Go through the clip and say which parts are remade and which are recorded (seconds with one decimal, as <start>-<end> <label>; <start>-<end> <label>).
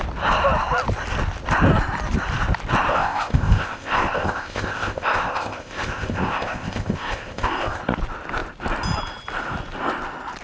0.0-2.9 recorded; 2.9-7.8 remade; 7.8-10.4 recorded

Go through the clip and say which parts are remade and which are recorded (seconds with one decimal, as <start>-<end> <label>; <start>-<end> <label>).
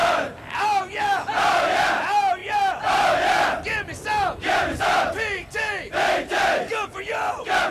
0.0-7.7 recorded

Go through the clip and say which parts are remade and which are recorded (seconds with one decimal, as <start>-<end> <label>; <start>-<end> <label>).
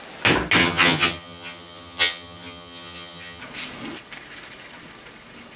0.0-0.6 recorded; 0.6-3.4 remade; 3.4-5.6 recorded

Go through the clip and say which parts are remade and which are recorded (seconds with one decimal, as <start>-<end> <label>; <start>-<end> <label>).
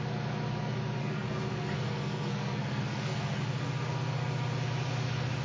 0.0-1.0 recorded; 1.0-3.4 remade; 3.4-5.4 recorded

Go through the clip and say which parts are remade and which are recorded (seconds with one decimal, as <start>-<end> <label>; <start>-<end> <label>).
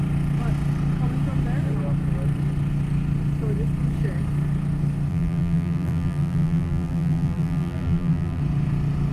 0.0-5.1 recorded; 5.1-8.4 remade; 8.4-9.1 recorded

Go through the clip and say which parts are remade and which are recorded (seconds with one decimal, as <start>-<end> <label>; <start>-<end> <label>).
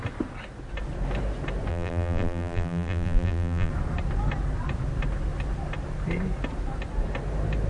0.0-1.7 recorded; 1.7-3.7 remade; 3.7-7.7 recorded